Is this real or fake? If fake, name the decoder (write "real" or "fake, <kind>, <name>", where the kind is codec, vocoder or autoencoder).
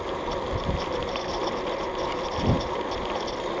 real